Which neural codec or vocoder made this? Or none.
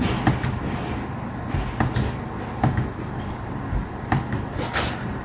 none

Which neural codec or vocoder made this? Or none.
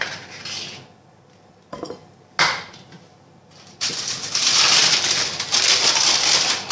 none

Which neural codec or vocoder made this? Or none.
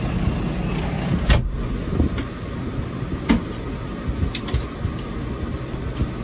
none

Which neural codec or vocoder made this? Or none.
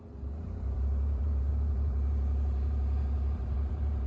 vocoder, BigVGAN v2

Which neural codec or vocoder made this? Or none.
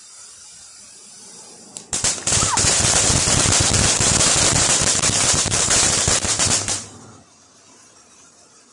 vocoder, BigVGAN v2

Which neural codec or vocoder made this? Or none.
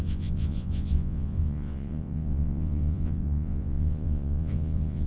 vocoder, Vocos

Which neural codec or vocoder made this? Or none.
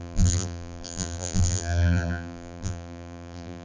vocoder, BigVGAN v2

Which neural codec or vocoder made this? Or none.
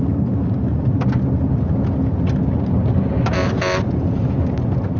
none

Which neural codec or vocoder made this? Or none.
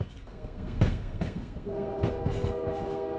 codec, SNAC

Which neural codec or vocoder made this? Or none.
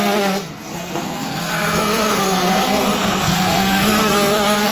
codec, SNAC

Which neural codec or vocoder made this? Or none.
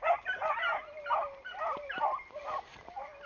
none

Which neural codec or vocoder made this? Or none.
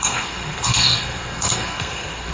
codec, SNAC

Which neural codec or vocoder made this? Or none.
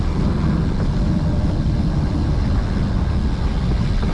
none